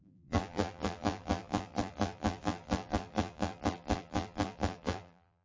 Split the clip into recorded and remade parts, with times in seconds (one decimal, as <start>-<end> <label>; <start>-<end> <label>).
0.0-5.4 remade